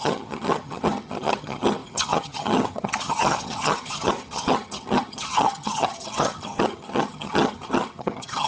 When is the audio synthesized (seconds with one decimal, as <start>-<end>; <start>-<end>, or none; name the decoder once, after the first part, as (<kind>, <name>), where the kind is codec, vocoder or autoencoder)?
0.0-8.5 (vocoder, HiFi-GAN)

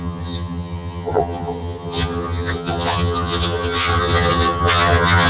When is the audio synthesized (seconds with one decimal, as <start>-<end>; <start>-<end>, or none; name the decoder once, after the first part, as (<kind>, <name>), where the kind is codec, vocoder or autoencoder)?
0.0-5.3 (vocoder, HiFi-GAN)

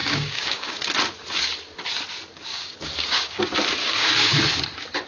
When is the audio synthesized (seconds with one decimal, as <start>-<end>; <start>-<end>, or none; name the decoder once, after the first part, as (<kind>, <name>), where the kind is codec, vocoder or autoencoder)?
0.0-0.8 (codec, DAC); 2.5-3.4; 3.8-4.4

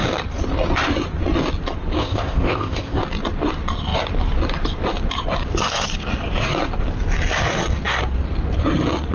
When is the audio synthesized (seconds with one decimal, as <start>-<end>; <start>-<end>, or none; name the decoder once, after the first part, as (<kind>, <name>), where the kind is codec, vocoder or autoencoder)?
2.0-3.0 (codec, ZipCodec)